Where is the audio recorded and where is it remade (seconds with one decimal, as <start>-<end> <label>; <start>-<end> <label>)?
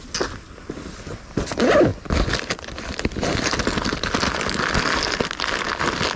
0.0-6.2 recorded